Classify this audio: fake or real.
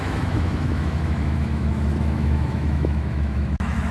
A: fake